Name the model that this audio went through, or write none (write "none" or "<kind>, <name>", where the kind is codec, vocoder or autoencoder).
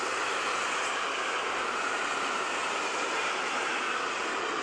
none